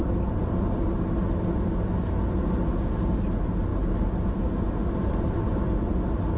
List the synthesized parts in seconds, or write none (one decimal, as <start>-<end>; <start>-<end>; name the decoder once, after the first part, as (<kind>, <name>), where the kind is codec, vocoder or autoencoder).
3.7-5.3 (vocoder, BigVGAN v2)